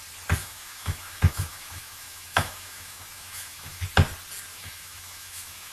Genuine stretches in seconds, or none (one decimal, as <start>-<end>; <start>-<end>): 0.0-0.4; 3.8-4.5